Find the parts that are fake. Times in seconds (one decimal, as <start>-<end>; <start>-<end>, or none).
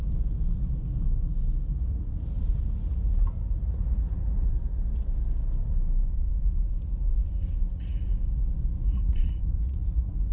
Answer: 1.7-4.5; 6.1-8.2; 8.7-10.3